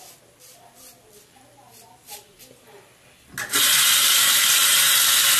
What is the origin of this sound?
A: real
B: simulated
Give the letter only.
A